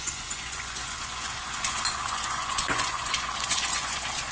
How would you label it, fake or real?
fake